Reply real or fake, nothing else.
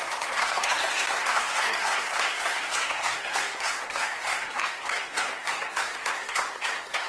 fake